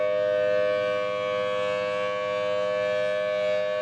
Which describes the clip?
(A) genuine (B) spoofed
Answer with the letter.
A